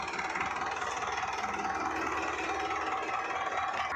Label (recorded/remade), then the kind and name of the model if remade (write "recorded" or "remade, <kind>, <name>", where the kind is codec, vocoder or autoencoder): recorded